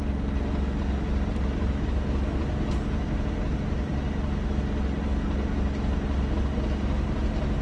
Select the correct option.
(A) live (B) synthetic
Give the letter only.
A